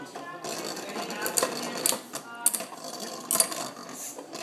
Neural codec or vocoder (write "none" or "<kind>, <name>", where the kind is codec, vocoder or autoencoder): none